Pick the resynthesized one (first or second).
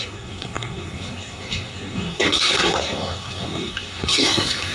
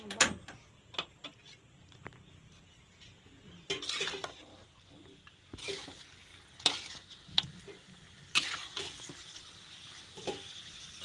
first